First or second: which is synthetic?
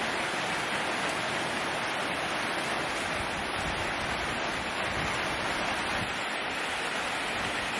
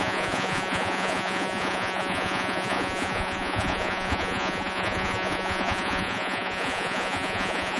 second